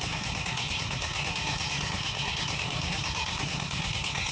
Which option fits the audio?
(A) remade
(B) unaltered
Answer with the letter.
A